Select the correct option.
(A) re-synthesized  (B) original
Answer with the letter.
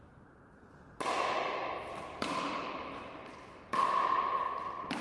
B